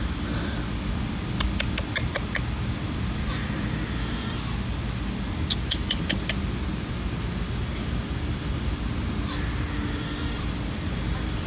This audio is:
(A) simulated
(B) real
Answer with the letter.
B